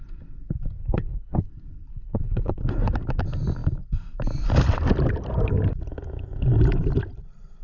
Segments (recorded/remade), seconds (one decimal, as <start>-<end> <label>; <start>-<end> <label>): 0.0-0.8 recorded; 0.8-1.5 remade; 1.5-1.9 recorded; 1.9-2.6 remade; 2.6-7.6 recorded